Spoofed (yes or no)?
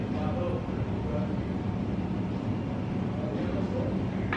no